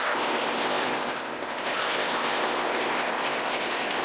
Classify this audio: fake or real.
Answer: fake